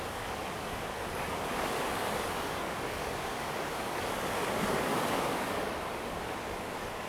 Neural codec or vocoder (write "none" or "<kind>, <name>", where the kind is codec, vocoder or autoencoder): codec, DAC